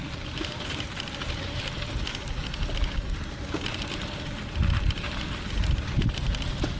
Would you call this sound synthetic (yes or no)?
no